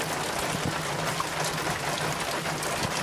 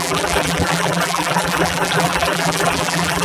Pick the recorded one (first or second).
first